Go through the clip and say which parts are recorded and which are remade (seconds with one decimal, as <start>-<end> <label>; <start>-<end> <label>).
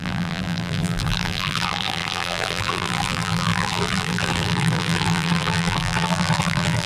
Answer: 0.0-6.9 remade